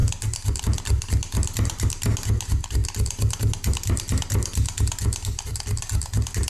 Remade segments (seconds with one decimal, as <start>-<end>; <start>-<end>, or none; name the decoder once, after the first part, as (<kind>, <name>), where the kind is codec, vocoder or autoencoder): none

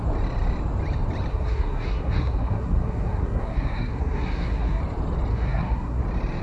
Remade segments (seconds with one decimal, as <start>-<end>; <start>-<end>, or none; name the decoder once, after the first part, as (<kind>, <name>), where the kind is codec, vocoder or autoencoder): 1.3-4.8 (codec, SNAC); 5.3-6.0